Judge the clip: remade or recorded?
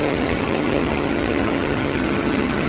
remade